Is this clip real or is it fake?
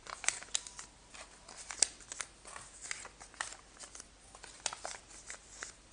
real